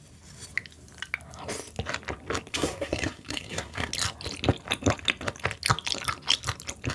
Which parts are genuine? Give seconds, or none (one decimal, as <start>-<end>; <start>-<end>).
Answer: 0.0-2.5; 3.9-6.9